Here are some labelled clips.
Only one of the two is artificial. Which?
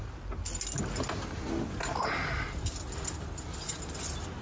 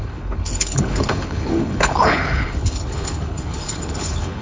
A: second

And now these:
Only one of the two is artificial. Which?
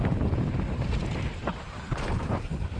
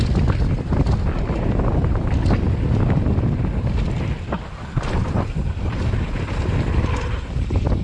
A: first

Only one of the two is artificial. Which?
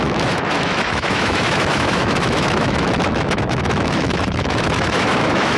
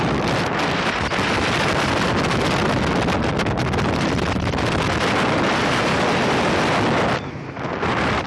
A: first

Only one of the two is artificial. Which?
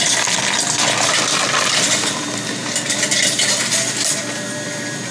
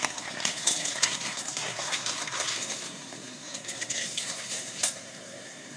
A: second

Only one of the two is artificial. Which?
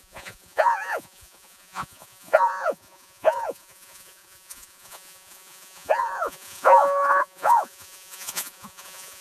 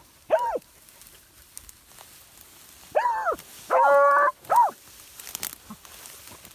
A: first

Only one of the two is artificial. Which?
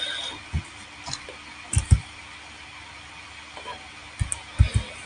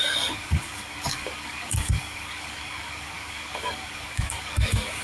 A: second